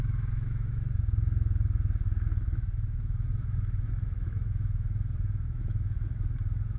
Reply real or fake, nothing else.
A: fake